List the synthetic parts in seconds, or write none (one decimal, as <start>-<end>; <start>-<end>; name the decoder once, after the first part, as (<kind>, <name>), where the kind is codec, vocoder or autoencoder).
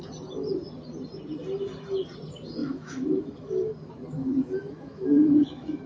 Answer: 2.6-3.7 (autoencoder, DAC-VAE); 4.2-5.9